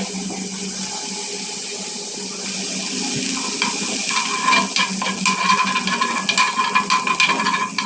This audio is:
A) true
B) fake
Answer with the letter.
A